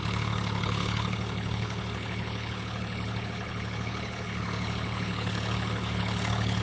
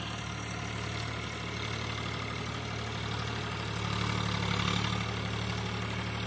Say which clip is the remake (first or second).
first